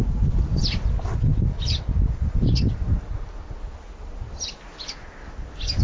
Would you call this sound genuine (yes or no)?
yes